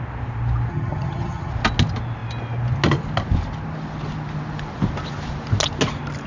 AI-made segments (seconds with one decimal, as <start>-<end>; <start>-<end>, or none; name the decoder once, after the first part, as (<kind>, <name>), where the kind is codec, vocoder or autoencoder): 0.7-1.5 (vocoder, HiFi-GAN)